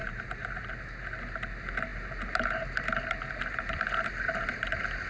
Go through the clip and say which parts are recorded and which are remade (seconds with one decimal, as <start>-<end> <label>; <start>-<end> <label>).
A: 0.0-0.6 remade; 0.6-5.1 recorded